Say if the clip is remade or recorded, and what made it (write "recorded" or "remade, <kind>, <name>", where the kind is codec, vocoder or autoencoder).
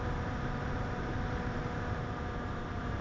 remade, vocoder, BigVGAN v2